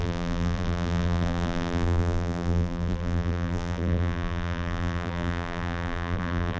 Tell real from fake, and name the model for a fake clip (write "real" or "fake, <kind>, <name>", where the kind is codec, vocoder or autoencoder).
fake, vocoder, BigVGAN v2